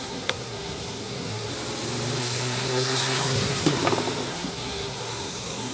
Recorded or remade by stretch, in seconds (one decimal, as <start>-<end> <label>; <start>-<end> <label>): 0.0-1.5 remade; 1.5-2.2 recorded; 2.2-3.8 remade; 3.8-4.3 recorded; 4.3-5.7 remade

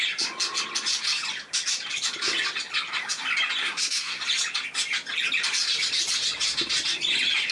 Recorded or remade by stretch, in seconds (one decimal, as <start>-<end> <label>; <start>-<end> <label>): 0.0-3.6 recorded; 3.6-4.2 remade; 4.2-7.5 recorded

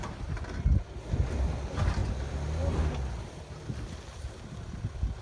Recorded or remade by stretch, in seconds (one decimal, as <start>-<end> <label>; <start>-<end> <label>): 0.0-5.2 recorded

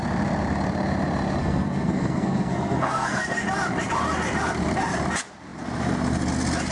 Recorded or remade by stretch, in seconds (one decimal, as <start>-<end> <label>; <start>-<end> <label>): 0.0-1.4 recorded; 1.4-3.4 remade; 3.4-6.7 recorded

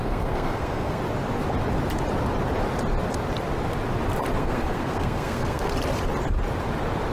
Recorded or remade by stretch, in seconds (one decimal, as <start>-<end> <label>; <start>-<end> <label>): 0.0-1.0 remade; 1.0-4.4 recorded; 4.4-5.7 remade; 5.7-7.1 recorded

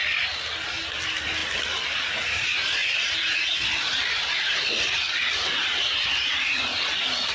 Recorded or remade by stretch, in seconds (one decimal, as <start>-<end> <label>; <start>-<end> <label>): 0.0-7.3 recorded

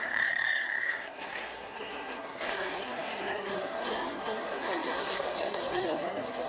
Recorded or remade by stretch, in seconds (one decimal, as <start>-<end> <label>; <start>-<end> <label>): 0.0-6.5 remade